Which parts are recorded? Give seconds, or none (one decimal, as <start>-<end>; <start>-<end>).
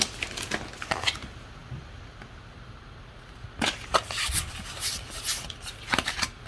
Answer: 0.0-6.5